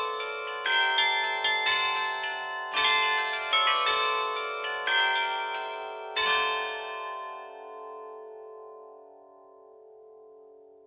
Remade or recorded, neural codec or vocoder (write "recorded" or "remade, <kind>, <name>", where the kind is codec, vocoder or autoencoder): recorded